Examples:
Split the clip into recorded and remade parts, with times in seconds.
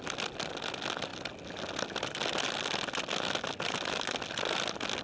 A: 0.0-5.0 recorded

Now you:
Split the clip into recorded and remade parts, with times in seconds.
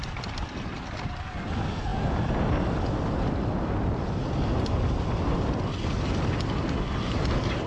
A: 0.0-7.7 recorded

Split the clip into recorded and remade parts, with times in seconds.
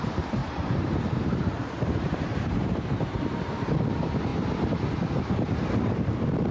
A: 0.0-0.4 recorded; 0.4-3.5 remade; 3.5-6.5 recorded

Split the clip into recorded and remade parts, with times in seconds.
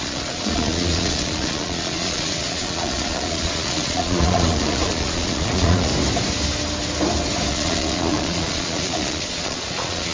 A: 0.0-5.9 remade; 5.9-7.5 recorded; 7.5-10.1 remade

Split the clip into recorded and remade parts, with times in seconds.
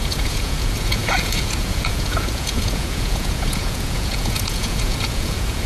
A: 0.0-5.7 remade